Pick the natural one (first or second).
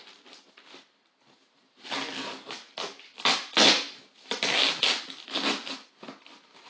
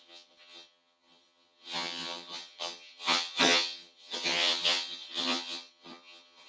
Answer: first